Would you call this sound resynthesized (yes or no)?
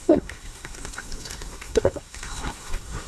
yes